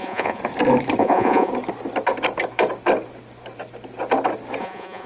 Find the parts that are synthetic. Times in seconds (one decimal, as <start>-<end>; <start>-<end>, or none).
0.0-0.4; 1.0-1.5; 4.6-5.1